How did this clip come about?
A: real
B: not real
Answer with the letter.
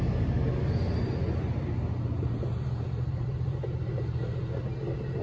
A